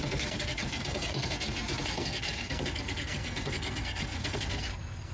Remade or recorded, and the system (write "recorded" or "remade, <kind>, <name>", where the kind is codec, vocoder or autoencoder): remade, codec, SNAC